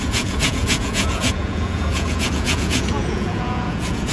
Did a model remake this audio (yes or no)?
yes